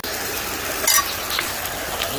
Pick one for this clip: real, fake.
real